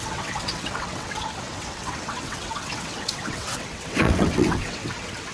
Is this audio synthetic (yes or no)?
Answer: yes